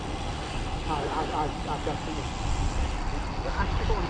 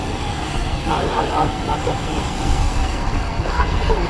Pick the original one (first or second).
first